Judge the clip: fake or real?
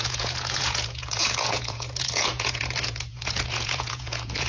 fake